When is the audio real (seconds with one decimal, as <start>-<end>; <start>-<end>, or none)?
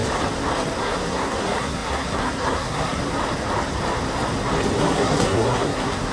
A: 0.0-0.8; 3.0-4.8